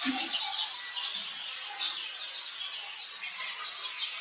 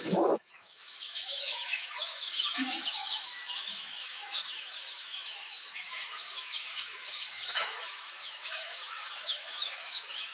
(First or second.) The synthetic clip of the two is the second